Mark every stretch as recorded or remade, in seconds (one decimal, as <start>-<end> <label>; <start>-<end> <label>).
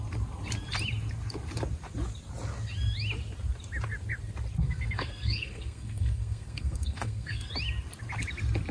0.0-4.6 recorded; 4.6-7.5 remade; 7.5-8.7 recorded